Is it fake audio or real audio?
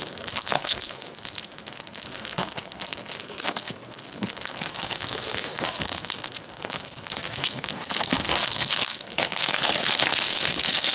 fake